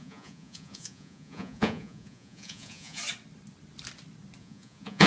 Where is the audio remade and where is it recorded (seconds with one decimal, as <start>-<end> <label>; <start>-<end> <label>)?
0.0-3.0 remade; 3.0-4.4 recorded; 4.4-5.1 remade